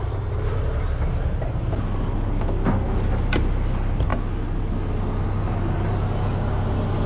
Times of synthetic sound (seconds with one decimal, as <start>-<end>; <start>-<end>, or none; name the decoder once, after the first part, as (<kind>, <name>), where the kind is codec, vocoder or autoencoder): none